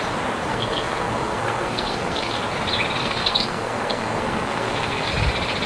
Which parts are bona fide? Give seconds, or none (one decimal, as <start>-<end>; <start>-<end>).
0.0-0.5; 2.4-3.0; 5.1-5.7